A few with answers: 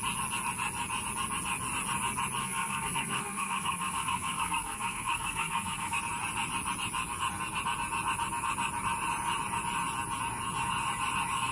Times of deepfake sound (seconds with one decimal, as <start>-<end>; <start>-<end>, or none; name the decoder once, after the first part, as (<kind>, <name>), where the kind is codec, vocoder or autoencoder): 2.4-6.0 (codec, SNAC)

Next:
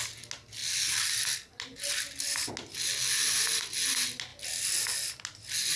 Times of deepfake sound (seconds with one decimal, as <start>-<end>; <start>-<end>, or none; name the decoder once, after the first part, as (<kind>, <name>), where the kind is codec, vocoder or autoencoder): none

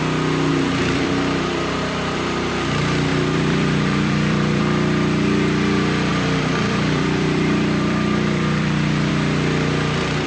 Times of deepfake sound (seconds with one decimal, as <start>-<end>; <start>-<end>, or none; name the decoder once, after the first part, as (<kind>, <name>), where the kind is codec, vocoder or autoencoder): 0.5-2.5 (vocoder, BigVGAN v2); 3.1-4.6; 6.1-9.1

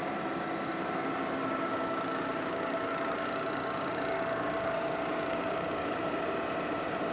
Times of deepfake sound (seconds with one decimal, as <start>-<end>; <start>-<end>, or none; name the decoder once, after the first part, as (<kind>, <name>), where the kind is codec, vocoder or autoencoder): 1.7-6.0 (codec, DAC)

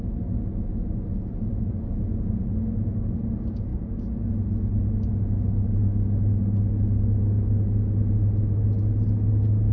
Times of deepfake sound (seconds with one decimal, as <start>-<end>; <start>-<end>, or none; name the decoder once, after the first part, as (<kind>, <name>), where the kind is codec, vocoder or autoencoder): none

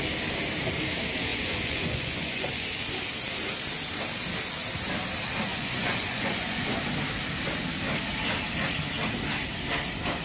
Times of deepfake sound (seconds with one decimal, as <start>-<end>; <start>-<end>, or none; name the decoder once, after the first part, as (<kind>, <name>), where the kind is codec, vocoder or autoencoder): 1.3-2.8 (vocoder, Vocos); 5.5-6.8